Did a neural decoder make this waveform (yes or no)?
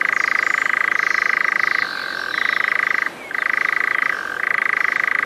no